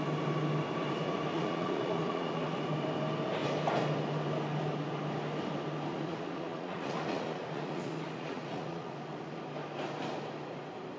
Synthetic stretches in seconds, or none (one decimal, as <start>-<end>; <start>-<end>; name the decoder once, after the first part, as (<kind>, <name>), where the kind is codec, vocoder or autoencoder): 1.3-2.6 (vocoder, Vocos); 5.9-9.4